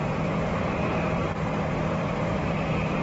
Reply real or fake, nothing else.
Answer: fake